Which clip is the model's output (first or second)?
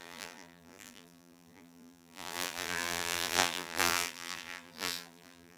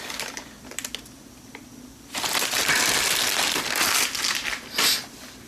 first